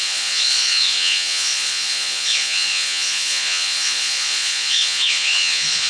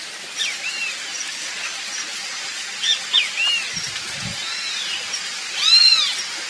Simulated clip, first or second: first